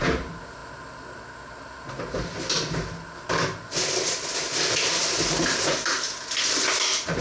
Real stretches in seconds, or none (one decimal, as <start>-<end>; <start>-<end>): 0.0-7.2